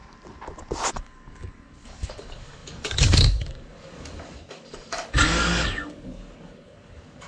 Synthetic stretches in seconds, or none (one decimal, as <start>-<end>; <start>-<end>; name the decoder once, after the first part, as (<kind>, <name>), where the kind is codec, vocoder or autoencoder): 0.9-7.3 (codec, DAC)